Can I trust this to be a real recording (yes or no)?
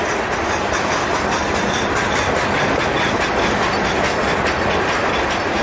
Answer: yes